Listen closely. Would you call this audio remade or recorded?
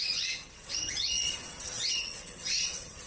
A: remade